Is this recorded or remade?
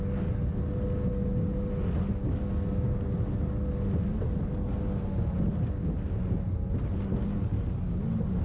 recorded